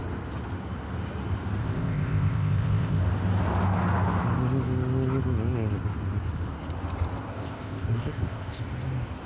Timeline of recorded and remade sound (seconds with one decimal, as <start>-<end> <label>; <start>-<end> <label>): 0.0-1.6 recorded; 1.6-3.0 remade; 3.0-7.3 recorded; 7.3-8.6 remade; 8.6-9.3 recorded